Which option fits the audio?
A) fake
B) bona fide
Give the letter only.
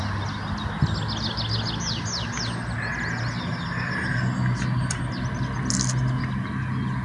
B